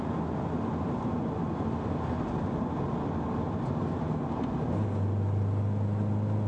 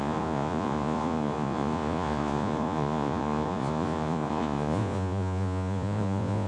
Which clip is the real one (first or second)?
first